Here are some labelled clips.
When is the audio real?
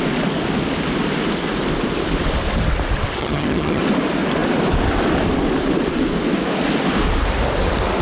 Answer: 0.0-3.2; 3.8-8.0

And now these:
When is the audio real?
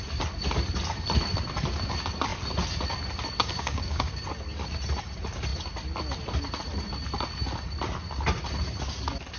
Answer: 0.0-3.4; 4.1-9.4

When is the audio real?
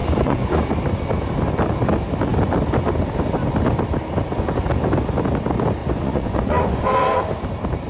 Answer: 0.6-5.8; 7.2-7.9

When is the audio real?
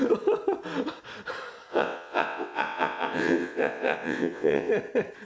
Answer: 0.0-1.7; 4.7-5.3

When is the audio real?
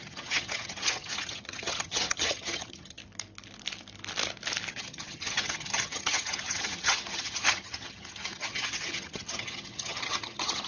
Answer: 3.0-4.7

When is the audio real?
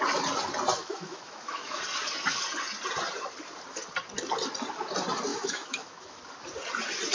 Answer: 0.0-0.8; 1.8-5.3; 6.2-7.1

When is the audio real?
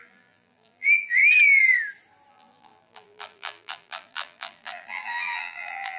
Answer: 1.2-2.3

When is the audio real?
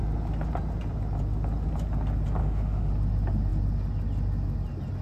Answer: 0.0-2.4; 2.9-5.0